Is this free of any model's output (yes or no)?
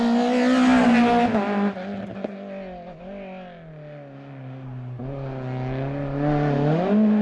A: yes